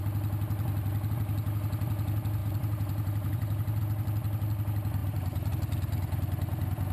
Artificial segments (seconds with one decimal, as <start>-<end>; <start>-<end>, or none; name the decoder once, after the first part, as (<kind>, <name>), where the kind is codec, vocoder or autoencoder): 2.4-3.8 (vocoder, BigVGAN v2); 5.0-5.5